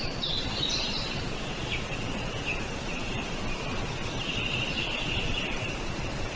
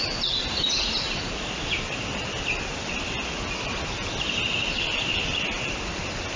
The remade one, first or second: first